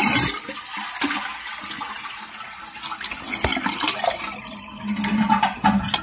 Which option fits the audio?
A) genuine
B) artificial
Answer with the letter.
A